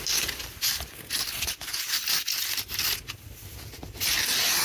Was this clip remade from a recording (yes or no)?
no